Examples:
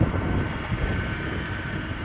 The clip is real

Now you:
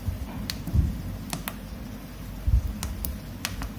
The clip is real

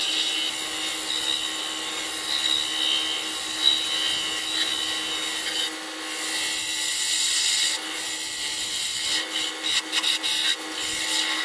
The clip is real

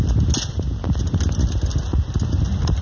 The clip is real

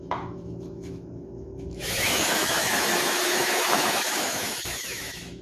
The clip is fake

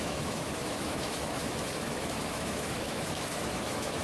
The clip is fake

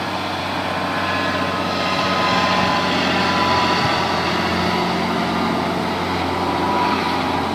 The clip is real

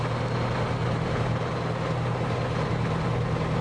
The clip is real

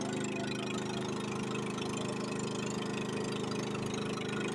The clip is real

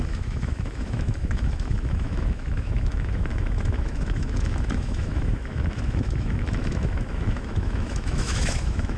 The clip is fake